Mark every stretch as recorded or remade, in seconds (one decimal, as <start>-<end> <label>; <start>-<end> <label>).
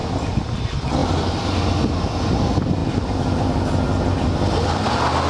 0.0-5.3 recorded